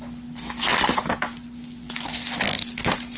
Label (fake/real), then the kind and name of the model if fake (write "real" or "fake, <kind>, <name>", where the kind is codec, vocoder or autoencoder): real